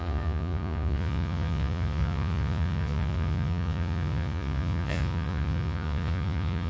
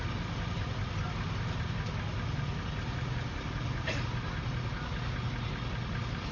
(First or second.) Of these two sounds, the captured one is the second